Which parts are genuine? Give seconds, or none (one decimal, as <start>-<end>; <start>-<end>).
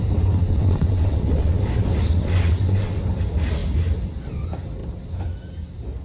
0.0-0.4; 1.6-2.1; 3.0-6.0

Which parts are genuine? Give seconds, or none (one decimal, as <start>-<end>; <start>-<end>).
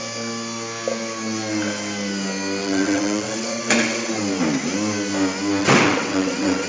0.0-2.6; 4.1-5.6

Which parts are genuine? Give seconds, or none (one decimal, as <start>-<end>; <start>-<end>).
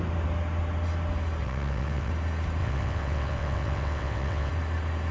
0.0-1.4; 2.1-2.6; 4.5-5.1